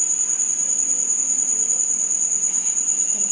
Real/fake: real